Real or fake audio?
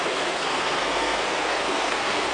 fake